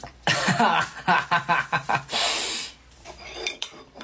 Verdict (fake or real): fake